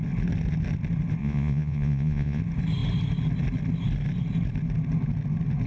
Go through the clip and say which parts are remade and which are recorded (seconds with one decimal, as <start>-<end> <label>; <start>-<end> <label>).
0.0-1.2 recorded; 1.2-2.4 remade; 2.4-5.7 recorded